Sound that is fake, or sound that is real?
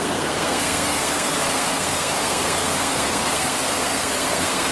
fake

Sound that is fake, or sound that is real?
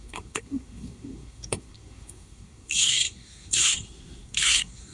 fake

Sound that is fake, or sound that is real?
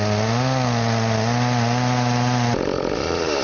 real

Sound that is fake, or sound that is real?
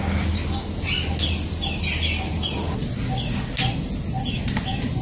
real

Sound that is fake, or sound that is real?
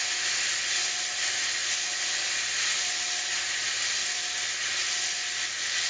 real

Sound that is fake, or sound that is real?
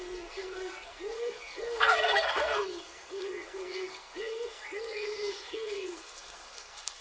fake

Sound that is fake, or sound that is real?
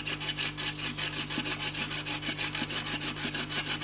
real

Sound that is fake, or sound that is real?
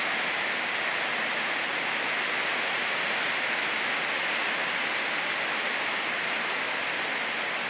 real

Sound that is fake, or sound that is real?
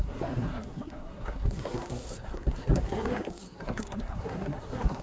fake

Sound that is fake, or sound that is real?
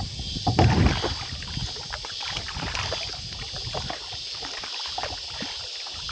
real